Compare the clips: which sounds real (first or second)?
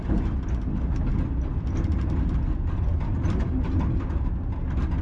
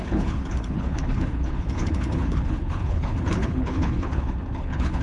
first